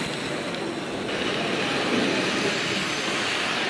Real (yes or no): yes